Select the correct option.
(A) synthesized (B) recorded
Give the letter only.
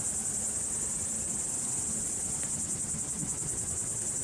B